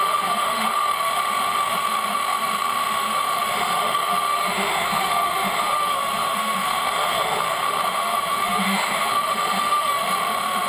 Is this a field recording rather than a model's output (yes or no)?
no